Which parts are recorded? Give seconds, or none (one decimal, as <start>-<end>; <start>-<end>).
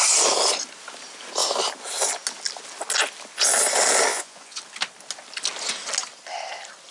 0.0-4.1; 4.6-6.9